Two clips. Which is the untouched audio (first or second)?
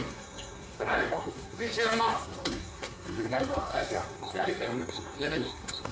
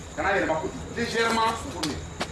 second